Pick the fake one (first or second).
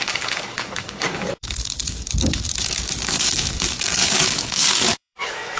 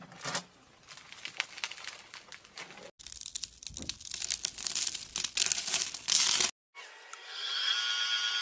first